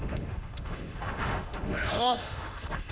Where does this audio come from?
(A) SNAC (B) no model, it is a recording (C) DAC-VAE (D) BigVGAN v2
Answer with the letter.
C